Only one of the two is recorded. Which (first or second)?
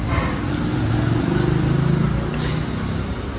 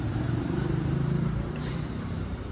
first